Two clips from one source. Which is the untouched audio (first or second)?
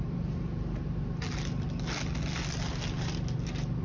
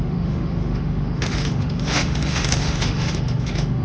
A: first